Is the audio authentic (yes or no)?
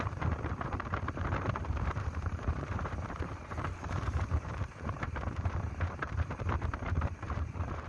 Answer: no